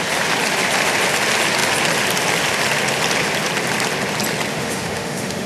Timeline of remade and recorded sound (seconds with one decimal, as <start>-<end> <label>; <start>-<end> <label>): 0.0-4.5 recorded; 4.5-5.5 remade